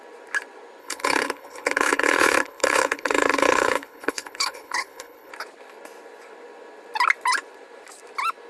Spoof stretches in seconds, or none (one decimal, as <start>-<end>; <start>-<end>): 0.8-5.3